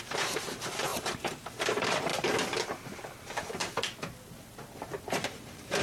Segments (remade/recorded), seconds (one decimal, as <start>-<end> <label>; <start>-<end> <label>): 0.0-2.1 remade; 2.1-5.0 recorded; 5.0-5.8 remade